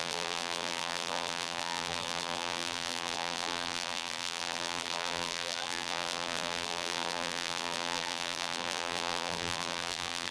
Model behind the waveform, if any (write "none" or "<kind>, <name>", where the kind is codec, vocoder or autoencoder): vocoder, BigVGAN v2